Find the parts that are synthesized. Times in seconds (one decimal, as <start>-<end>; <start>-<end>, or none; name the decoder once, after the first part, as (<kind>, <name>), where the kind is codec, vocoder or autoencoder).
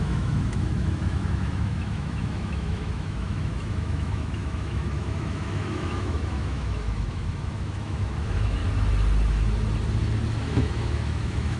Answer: 0.0-8.6 (autoencoder, DAC-VAE); 10.4-11.6